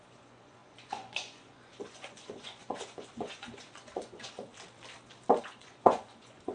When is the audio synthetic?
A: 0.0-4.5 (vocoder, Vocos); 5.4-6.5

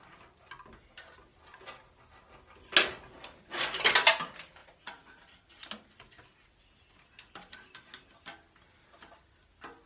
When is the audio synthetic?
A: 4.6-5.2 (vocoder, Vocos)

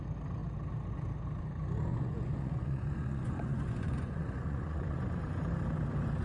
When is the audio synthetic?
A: 1.9-5.2 (vocoder, Vocos)